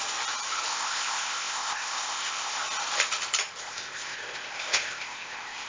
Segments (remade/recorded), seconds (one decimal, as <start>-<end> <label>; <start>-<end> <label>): 0.0-0.7 recorded; 0.7-2.6 remade; 2.6-3.6 recorded; 3.6-5.7 remade